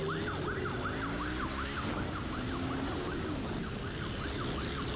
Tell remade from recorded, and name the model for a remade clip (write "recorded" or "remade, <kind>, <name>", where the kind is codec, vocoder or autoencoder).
recorded